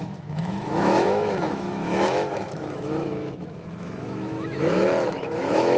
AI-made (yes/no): yes